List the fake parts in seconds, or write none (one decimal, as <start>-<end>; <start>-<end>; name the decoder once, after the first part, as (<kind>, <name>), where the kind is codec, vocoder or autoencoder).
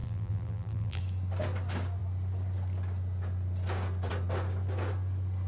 0.0-1.0 (vocoder, BigVGAN v2)